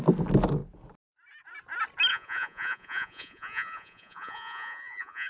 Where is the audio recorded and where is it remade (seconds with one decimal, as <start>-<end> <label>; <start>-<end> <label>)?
0.0-2.1 recorded; 2.1-5.3 remade